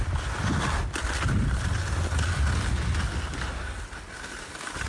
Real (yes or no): yes